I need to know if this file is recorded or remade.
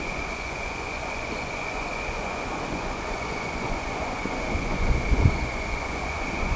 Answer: remade